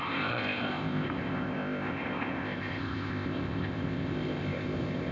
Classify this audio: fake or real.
fake